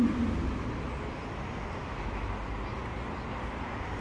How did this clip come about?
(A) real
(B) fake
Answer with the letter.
A